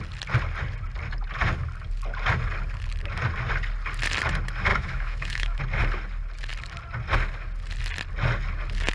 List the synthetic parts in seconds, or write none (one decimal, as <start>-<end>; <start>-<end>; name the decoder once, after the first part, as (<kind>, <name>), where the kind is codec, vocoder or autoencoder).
4.7-5.6 (autoencoder, DAC-VAE)